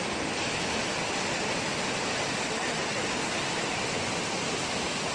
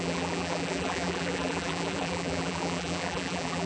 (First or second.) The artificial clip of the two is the second